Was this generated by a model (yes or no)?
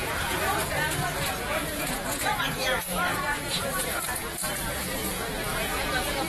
yes